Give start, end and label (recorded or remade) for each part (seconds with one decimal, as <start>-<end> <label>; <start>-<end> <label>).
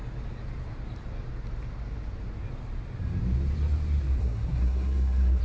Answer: 0.0-4.2 recorded; 4.2-5.4 remade